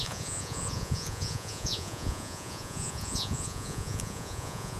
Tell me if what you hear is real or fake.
fake